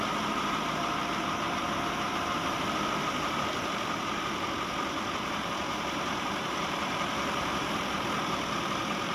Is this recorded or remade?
remade